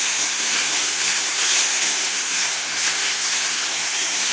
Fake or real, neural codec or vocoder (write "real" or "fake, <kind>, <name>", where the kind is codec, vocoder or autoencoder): fake, codec, SNAC